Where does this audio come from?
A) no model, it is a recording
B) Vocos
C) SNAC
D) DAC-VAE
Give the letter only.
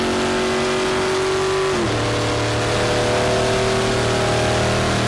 A